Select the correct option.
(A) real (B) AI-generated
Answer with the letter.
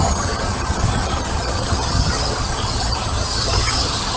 B